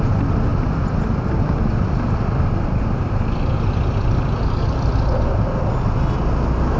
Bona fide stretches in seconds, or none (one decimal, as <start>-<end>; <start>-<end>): 0.0-6.8